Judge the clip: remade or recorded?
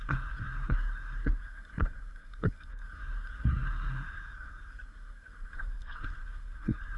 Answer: remade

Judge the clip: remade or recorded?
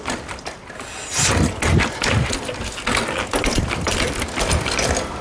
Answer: recorded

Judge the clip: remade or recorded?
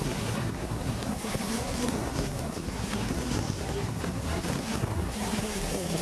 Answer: remade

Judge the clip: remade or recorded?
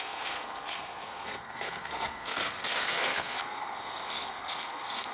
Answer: remade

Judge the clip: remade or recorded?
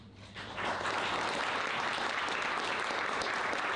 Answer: recorded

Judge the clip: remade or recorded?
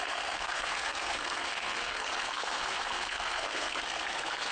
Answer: remade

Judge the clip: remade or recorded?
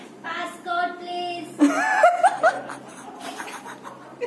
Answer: recorded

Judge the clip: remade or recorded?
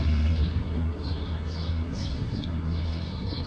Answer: remade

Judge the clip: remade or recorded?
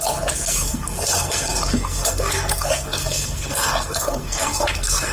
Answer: remade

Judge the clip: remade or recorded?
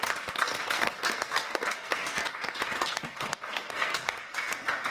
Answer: remade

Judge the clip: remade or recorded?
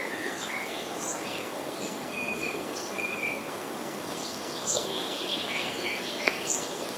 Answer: remade